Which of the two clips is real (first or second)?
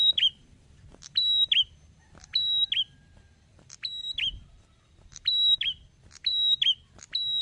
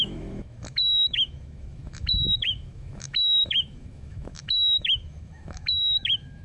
first